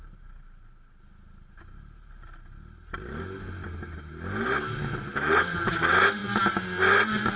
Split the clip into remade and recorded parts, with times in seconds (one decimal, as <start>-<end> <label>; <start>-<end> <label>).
0.0-5.1 recorded; 5.1-5.7 remade; 5.7-7.4 recorded